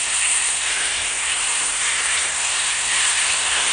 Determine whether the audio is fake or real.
fake